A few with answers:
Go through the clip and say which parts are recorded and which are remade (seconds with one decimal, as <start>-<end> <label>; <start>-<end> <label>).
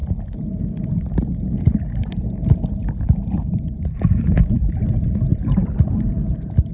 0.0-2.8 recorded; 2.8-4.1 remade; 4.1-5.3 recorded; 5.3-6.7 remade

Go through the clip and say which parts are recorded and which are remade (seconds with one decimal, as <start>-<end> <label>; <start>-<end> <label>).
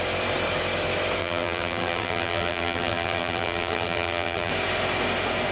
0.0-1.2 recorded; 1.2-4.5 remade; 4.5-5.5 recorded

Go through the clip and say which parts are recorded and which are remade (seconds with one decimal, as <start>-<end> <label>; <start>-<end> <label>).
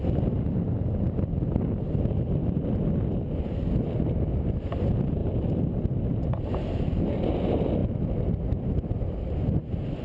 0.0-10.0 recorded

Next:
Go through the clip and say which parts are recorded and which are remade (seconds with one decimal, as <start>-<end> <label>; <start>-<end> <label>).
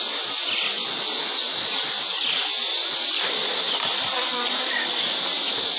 0.0-3.9 recorded; 3.9-4.8 remade; 4.8-5.8 recorded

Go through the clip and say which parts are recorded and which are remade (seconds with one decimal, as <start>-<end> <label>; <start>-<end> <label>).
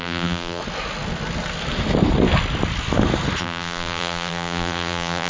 0.0-0.6 remade; 0.6-3.4 recorded; 3.4-5.3 remade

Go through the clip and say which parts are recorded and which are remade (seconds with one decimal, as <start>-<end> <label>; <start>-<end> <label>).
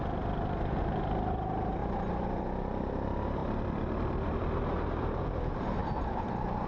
0.0-1.8 remade; 1.8-2.8 recorded; 2.8-5.8 remade; 5.8-6.7 recorded